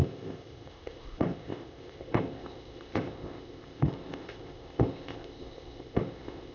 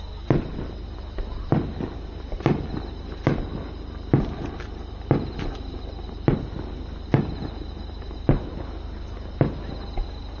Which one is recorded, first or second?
second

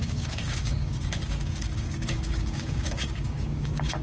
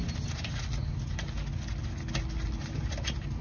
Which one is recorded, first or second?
second